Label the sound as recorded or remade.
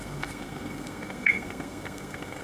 remade